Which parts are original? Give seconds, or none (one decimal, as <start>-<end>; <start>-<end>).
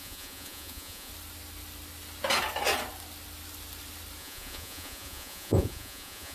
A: 1.1-4.2